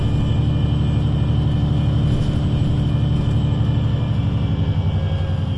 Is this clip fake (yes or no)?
no